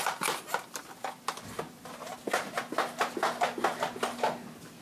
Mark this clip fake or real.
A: real